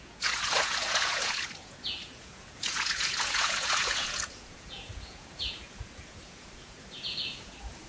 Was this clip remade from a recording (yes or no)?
yes